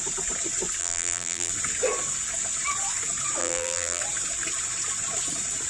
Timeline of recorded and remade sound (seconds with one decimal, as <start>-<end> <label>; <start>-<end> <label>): 0.0-0.8 recorded; 0.8-1.5 remade; 1.5-3.4 recorded; 3.4-4.0 remade; 4.0-5.7 recorded